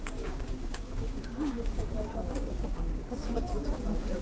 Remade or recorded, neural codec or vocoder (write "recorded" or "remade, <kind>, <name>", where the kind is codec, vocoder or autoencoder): remade, codec, DAC